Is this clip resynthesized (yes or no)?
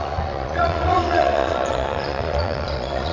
yes